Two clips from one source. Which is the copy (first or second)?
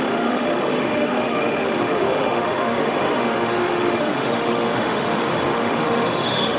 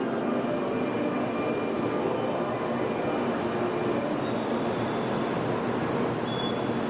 first